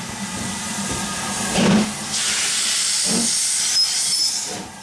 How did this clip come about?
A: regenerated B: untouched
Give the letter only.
B